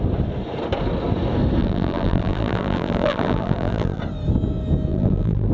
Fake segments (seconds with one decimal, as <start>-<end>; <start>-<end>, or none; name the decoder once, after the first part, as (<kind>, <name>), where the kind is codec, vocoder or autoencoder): 1.6-4.0 (vocoder, BigVGAN v2); 4.9-5.5